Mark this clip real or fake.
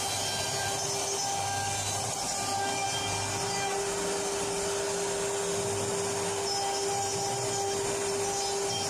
real